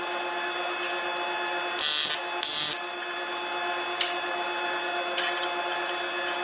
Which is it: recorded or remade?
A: recorded